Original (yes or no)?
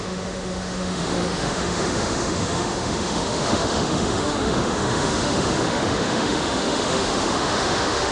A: no